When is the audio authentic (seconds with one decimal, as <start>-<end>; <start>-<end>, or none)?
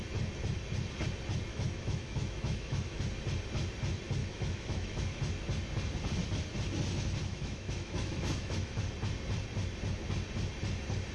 0.0-1.5; 3.0-4.2; 5.2-7.3; 8.8-11.1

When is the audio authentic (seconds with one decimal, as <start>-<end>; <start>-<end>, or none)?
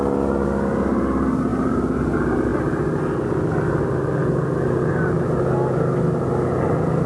0.0-7.1